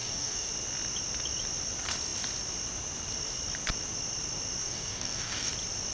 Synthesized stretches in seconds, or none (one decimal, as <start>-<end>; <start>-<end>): 0.0-0.5; 4.6-5.5